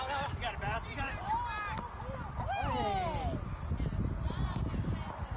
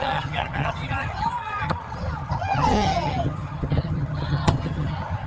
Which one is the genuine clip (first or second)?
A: first